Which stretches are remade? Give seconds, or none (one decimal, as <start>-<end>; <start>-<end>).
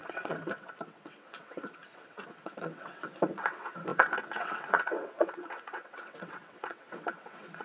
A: 0.0-7.6